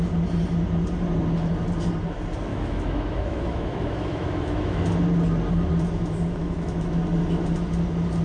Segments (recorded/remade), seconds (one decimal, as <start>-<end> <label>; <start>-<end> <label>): 0.0-2.5 recorded; 2.5-4.8 remade; 4.8-6.4 recorded; 6.4-7.0 remade; 7.0-8.2 recorded